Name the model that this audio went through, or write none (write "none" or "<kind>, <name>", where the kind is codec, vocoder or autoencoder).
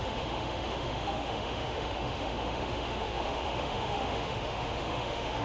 autoencoder, DAC-VAE